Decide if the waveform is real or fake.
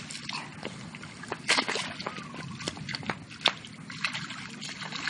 real